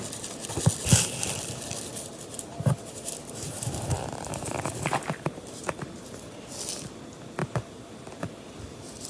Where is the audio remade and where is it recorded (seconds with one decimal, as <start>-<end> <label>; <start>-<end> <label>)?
0.0-1.9 recorded; 1.9-5.8 remade; 5.8-7.4 recorded; 7.4-8.3 remade; 8.3-9.1 recorded